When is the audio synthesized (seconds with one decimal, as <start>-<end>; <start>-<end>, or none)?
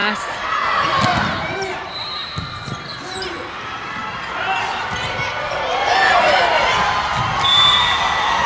0.0-2.4; 7.1-7.9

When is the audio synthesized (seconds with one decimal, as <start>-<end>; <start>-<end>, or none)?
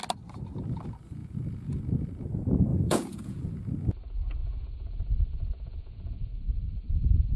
1.2-1.8; 2.7-3.4; 4.4-6.3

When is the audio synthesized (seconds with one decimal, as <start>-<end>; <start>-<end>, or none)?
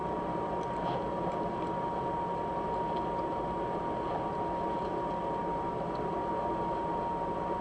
none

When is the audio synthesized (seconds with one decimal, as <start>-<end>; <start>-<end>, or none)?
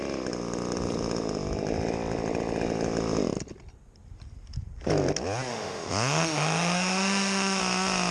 5.5-7.6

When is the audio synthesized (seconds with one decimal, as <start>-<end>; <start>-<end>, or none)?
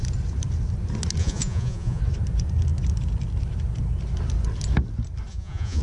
1.2-2.0; 5.3-5.8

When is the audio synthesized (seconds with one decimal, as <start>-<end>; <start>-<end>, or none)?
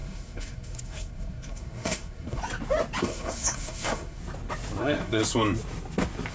0.0-2.4; 3.0-4.2; 4.8-5.2